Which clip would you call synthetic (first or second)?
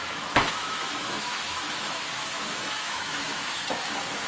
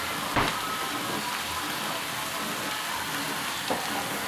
first